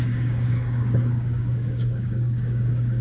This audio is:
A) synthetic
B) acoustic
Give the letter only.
A